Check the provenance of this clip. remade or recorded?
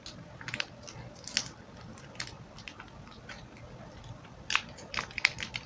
recorded